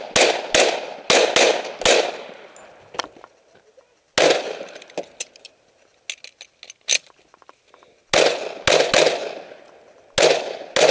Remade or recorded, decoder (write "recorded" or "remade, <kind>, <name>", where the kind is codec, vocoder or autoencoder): recorded